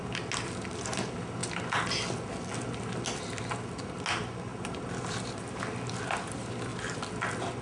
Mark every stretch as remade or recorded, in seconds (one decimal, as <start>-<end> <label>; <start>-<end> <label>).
0.0-7.6 recorded

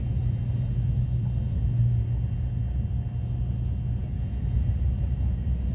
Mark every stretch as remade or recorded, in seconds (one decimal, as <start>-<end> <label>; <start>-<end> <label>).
0.0-5.7 recorded

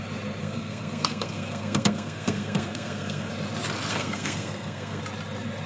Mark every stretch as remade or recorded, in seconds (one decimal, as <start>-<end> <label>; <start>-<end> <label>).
0.0-0.4 recorded; 0.4-3.3 remade; 3.3-3.9 recorded; 3.9-5.0 remade; 5.0-5.7 recorded

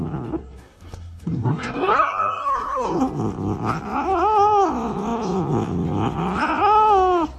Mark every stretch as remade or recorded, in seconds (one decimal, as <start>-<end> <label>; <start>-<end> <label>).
0.0-0.4 recorded; 0.4-3.0 remade; 3.0-7.4 recorded

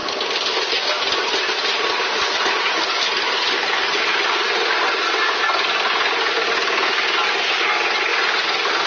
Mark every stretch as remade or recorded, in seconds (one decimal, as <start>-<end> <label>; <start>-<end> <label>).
0.0-8.9 recorded

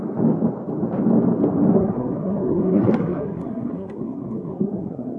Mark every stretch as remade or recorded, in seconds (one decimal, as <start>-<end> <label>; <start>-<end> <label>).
0.0-1.8 recorded; 1.8-5.2 remade